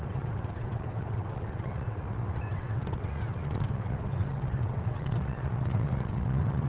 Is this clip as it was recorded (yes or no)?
no